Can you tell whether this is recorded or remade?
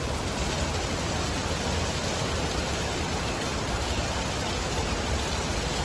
recorded